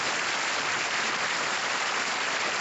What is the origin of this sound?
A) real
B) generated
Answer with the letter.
A